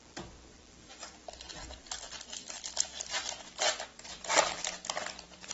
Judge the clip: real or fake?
fake